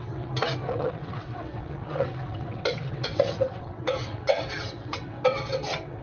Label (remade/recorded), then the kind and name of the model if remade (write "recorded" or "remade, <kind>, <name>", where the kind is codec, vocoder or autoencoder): remade, vocoder, WaveNeXt